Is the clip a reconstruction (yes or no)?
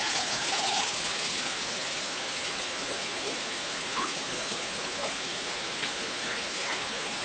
yes